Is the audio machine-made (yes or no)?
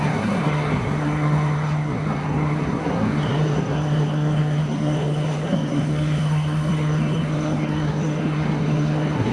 yes